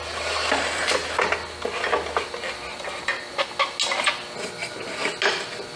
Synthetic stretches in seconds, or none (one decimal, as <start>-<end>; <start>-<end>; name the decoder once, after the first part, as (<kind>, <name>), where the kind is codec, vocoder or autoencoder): 2.7-3.3 (vocoder, BigVGAN v2); 4.6-5.1